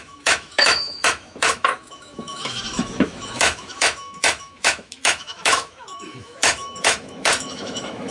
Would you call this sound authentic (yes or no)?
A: no